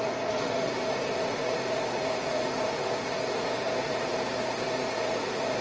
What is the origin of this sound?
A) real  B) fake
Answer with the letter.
B